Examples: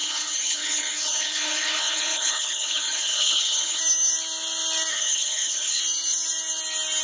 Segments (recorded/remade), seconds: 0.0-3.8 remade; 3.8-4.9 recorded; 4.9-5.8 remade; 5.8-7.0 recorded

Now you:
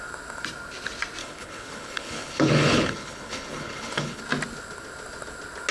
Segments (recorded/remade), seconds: 0.0-1.2 recorded; 1.2-4.2 remade; 4.2-5.7 recorded